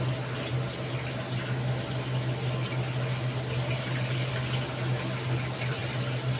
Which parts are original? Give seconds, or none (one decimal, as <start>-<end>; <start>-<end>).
0.0-6.4